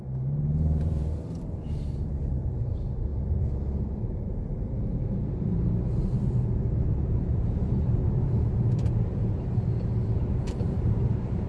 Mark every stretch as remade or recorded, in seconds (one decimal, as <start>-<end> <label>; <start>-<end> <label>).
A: 0.0-2.1 remade; 2.1-2.6 recorded; 2.6-3.1 remade; 3.1-4.0 recorded; 4.0-8.0 remade; 8.0-8.7 recorded; 8.7-11.5 remade